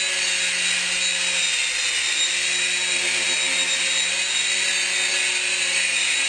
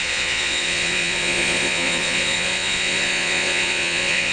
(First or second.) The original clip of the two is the first